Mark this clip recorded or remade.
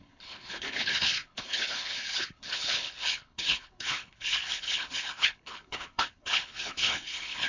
remade